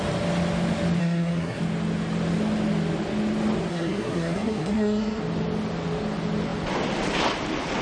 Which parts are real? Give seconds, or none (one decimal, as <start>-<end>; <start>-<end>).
0.0-1.0; 1.6-3.7; 5.2-7.8